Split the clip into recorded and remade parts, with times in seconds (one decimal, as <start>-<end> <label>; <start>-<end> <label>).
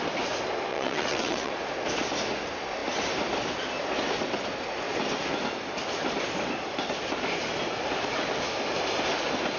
0.0-0.7 recorded; 0.7-1.5 remade; 1.5-9.6 recorded